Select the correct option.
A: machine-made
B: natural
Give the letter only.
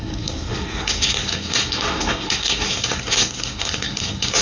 A